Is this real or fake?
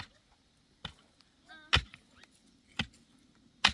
real